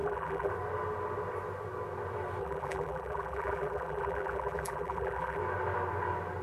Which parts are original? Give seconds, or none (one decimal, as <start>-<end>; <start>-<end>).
0.5-2.4; 5.4-6.4